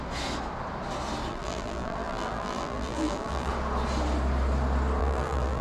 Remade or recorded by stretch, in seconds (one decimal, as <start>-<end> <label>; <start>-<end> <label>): 0.0-1.3 recorded; 1.3-3.5 remade; 3.5-5.0 recorded; 5.0-5.6 remade